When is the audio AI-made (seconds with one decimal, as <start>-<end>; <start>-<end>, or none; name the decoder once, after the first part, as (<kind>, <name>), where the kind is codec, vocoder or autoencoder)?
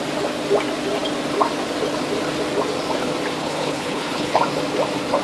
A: 3.4-4.4 (codec, HILCodec)